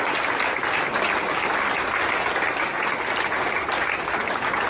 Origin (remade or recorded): recorded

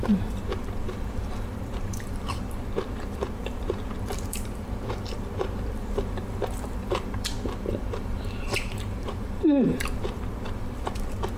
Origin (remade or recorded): remade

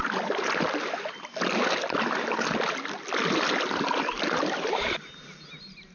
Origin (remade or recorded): recorded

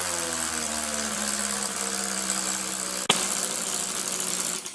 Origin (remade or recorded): recorded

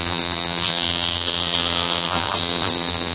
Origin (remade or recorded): remade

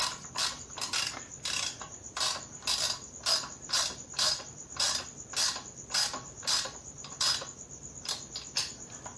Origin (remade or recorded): recorded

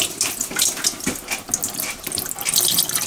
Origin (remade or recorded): recorded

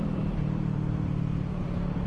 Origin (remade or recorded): remade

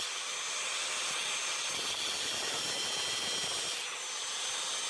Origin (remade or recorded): recorded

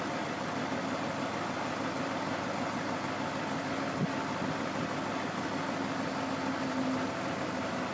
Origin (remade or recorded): recorded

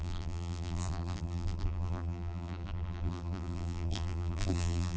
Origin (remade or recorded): remade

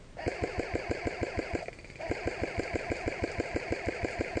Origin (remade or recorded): recorded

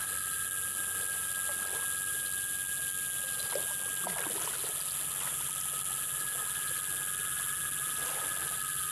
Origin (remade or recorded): recorded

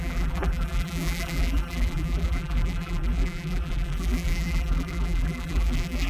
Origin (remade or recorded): remade